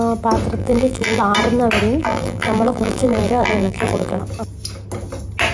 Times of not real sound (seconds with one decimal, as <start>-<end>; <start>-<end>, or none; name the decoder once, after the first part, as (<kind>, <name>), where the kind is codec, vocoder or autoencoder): 0.6-1.2 (vocoder, BigVGAN v2); 2.0-4.2